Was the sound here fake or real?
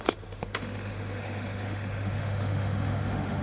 fake